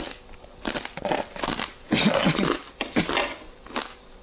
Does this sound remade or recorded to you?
recorded